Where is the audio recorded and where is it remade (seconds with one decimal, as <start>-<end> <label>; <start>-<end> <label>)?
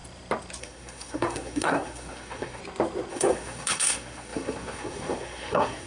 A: 0.0-0.6 recorded; 0.6-2.6 remade; 2.6-3.1 recorded; 3.1-5.9 remade